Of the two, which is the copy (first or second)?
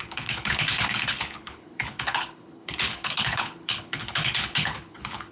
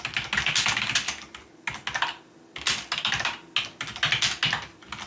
first